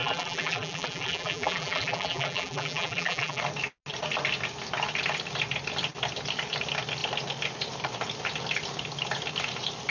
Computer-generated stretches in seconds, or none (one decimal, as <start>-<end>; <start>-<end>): 0.0-3.4